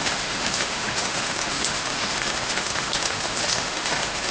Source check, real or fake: fake